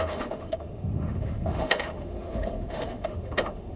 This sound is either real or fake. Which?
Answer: fake